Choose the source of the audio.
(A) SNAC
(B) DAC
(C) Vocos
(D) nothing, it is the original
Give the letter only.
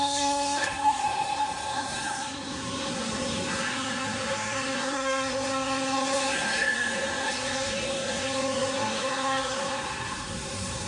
A